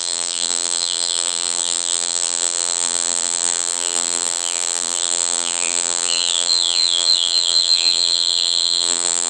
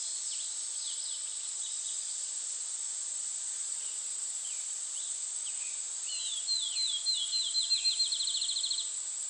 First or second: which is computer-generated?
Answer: first